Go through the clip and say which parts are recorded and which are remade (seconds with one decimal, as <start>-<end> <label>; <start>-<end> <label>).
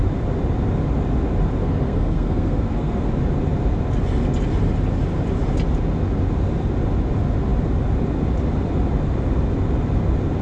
0.0-1.6 recorded; 1.6-3.1 remade; 3.1-10.4 recorded